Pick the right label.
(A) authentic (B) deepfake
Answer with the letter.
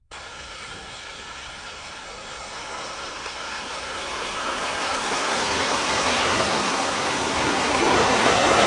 B